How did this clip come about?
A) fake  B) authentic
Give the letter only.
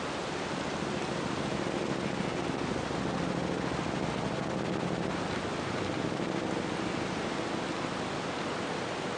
B